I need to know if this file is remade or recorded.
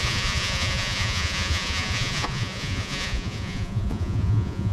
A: remade